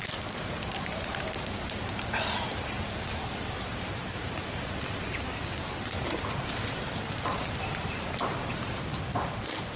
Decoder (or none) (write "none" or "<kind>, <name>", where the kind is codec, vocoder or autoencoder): vocoder, BigVGAN v2